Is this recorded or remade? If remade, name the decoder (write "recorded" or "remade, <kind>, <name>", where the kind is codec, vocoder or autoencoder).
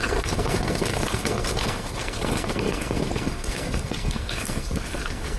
remade, codec, SNAC